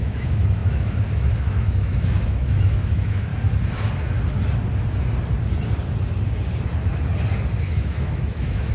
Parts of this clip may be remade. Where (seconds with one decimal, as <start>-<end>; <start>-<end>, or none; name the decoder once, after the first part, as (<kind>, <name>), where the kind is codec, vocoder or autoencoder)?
0.0-3.3 (autoencoder, DAC-VAE); 7.6-8.7

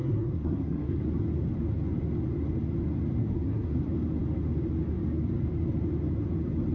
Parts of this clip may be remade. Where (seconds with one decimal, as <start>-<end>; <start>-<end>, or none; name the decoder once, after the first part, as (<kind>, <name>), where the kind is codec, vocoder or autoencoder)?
0.0-1.0 (codec, SNAC); 3.2-3.8

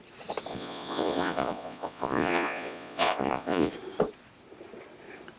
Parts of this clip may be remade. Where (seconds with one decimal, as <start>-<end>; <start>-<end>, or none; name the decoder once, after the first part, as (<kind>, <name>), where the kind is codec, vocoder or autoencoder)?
0.5-3.7 (vocoder, Vocos)